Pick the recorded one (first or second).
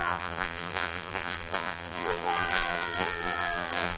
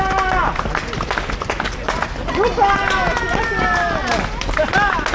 second